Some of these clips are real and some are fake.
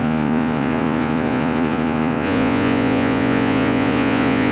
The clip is fake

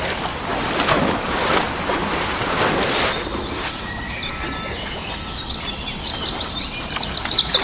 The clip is real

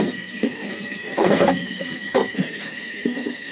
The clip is fake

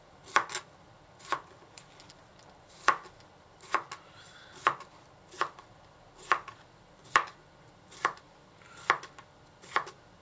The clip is real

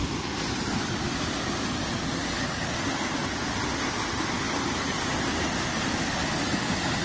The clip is real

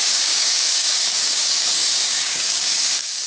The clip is fake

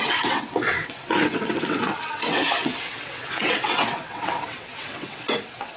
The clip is fake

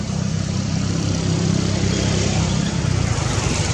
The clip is fake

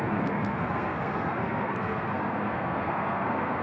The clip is fake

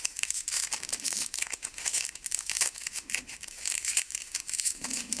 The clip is fake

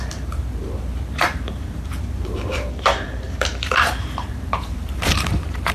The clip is fake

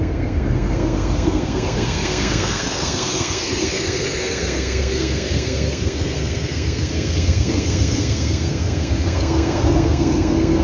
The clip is fake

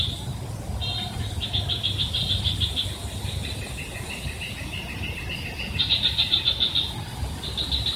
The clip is real